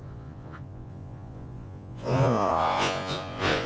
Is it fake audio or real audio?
fake